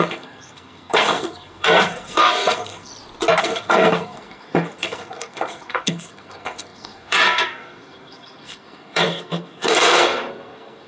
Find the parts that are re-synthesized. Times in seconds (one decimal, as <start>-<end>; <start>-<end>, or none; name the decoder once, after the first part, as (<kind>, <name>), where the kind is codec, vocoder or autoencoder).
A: 0.0-2.9 (codec, SNAC); 3.4-10.9